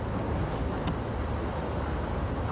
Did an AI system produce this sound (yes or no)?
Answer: no